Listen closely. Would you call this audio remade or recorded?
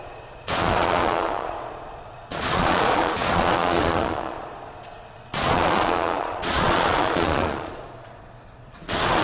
remade